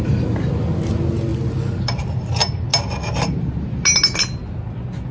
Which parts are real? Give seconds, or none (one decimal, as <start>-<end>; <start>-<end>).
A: 0.0-5.1